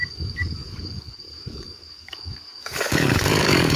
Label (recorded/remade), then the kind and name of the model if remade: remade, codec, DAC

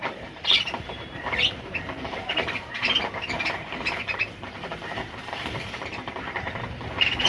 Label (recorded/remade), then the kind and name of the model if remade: remade, vocoder, BigVGAN v2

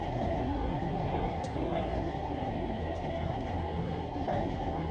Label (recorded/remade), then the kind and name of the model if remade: remade, codec, SNAC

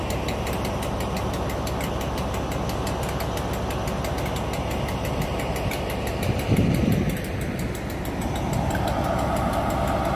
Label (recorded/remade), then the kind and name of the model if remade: recorded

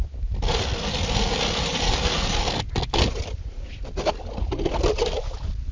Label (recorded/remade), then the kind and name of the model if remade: recorded